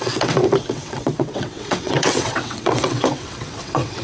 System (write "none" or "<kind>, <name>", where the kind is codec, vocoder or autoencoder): vocoder, WaveNeXt